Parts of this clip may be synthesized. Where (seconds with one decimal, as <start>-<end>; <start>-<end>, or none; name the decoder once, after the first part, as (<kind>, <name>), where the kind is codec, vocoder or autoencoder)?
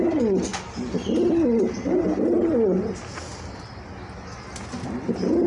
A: none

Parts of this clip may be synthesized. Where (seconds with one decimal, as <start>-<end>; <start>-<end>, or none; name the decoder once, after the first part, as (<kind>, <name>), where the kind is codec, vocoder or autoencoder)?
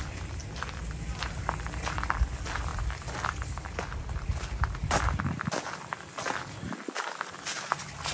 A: none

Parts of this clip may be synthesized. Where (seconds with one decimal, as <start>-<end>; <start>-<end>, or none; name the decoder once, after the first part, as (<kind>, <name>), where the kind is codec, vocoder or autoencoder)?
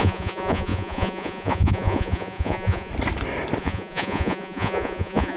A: 0.0-2.9 (vocoder, Vocos); 3.6-5.4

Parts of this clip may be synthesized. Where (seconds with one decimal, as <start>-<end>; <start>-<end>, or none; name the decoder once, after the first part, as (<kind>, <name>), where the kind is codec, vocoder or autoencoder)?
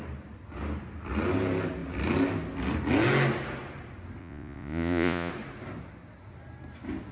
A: 4.2-5.3 (vocoder, Vocos)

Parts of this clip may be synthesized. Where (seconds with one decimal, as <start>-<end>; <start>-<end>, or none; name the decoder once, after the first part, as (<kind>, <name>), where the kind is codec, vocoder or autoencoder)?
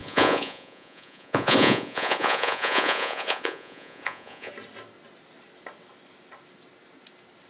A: 0.0-4.5 (vocoder, Vocos)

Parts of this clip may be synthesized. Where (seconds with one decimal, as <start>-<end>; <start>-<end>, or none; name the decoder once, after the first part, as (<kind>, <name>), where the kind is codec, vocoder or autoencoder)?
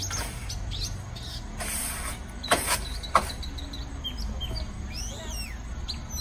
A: none